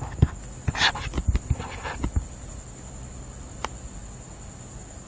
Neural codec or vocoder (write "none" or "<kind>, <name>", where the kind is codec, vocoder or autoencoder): none